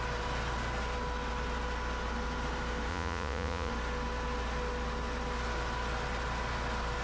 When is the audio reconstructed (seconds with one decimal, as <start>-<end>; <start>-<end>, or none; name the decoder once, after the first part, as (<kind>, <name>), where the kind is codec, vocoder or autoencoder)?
2.9-3.7 (vocoder, Vocos)